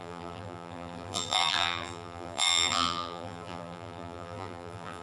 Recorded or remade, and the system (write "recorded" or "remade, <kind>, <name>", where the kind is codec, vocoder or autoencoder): remade, vocoder, BigVGAN v2